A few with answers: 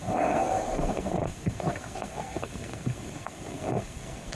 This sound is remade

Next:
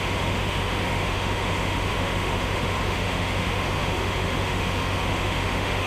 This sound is remade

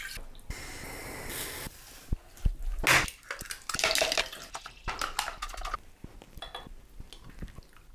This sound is recorded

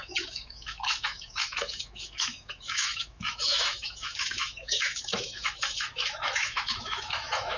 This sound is remade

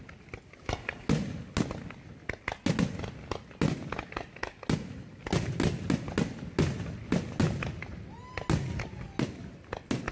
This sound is recorded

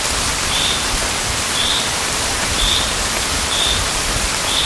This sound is recorded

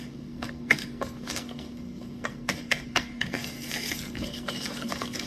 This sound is remade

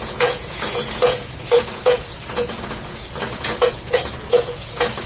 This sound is remade